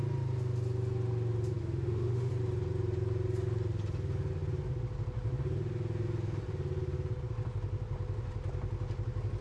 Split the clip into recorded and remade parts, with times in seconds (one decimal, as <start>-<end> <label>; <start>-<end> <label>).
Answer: 0.0-1.6 recorded; 1.6-2.3 remade; 2.3-9.4 recorded